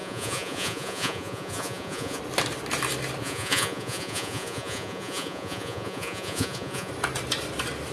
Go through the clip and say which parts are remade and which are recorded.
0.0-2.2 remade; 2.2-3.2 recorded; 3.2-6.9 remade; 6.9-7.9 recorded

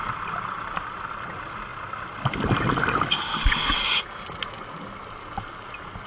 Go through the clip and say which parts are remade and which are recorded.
0.0-6.1 recorded

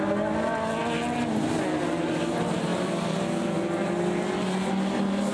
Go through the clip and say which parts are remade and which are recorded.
0.0-5.3 recorded

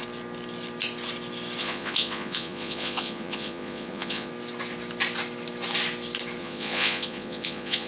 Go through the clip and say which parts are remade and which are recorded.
0.0-1.6 recorded; 1.6-4.3 remade; 4.3-6.4 recorded; 6.4-7.9 remade